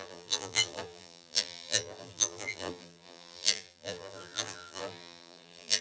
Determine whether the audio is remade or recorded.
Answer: remade